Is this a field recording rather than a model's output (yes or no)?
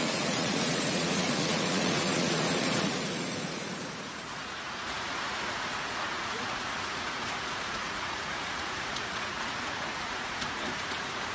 no